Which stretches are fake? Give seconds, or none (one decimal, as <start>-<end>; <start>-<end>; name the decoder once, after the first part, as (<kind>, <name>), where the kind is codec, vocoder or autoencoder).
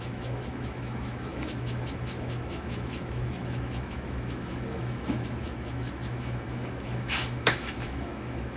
0.0-8.6 (autoencoder, DAC-VAE)